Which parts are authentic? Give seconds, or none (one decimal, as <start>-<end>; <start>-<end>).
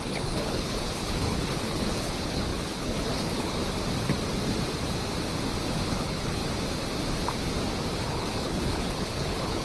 3.6-5.9; 6.4-8.0